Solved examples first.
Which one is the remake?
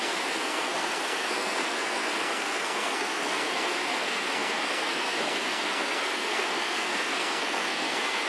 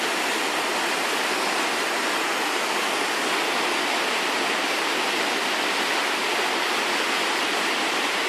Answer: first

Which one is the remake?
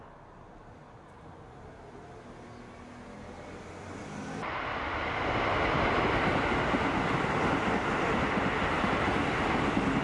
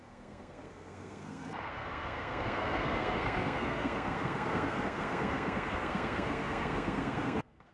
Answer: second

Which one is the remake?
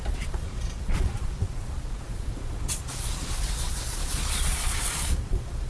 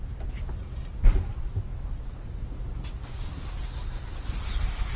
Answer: first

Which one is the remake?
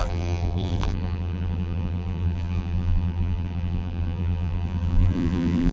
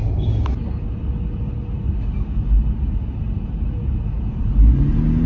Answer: first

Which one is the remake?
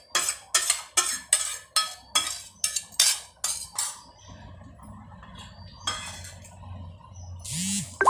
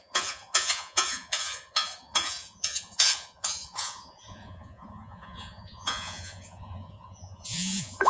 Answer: second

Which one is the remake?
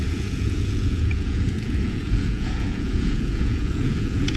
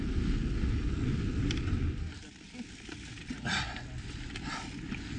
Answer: first